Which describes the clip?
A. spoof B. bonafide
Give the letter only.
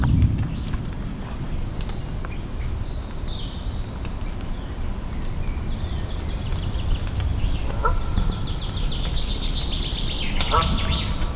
B